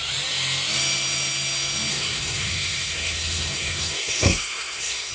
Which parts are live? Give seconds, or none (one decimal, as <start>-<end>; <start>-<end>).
0.0-1.9